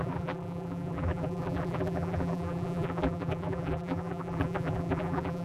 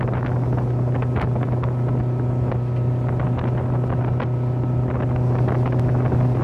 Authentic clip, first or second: second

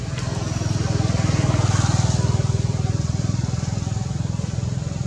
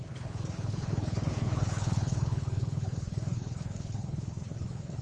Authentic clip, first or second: first